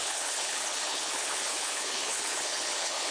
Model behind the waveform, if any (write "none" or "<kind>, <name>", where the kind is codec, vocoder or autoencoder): codec, HILCodec